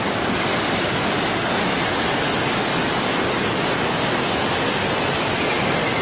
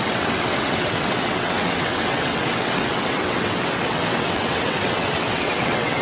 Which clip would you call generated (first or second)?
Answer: second